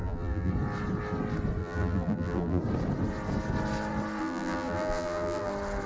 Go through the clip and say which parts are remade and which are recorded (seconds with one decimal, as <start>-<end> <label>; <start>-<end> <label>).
0.0-0.5 remade; 0.5-1.6 recorded; 1.6-2.6 remade; 2.6-4.2 recorded; 4.2-5.5 remade; 5.5-5.9 recorded